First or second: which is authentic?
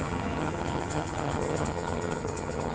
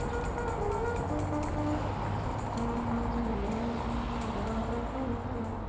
second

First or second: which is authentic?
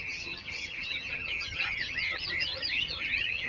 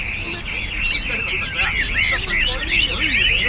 second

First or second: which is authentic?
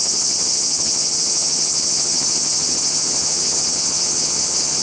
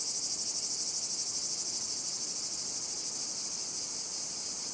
second